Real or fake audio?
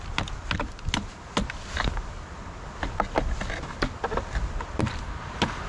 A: real